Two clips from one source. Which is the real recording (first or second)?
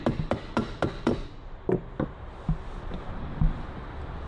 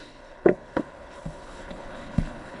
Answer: first